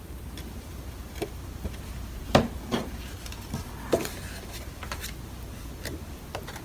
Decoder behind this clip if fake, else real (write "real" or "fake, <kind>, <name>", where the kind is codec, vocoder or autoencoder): real